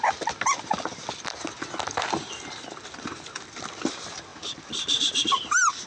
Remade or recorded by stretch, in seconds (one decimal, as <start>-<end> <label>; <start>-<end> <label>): 0.0-5.9 recorded